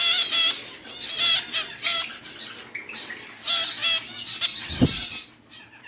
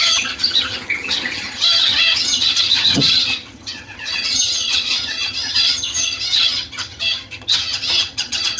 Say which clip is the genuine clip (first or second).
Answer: first